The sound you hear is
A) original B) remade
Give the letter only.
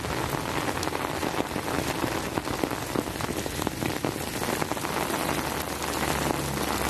A